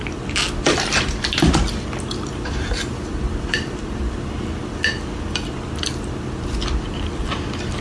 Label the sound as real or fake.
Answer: real